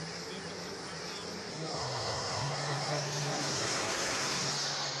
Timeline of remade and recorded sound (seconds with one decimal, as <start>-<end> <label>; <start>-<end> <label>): 0.0-1.5 recorded; 1.5-4.5 remade; 4.5-5.0 recorded